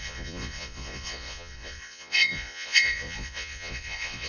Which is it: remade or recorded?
remade